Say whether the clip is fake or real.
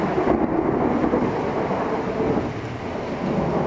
real